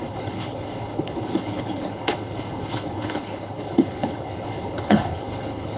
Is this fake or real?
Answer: fake